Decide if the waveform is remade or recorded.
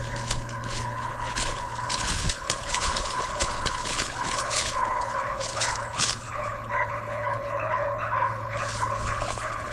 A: remade